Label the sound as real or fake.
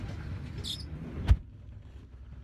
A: real